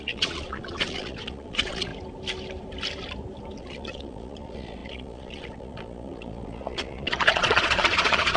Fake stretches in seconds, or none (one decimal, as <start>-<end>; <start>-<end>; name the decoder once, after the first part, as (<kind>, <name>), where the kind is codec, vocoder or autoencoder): 0.0-1.9 (vocoder, Vocos); 3.6-8.4

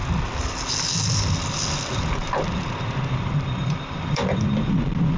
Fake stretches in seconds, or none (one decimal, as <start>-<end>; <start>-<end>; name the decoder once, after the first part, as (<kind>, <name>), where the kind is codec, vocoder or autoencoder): none